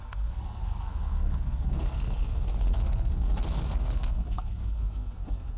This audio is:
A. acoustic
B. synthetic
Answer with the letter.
B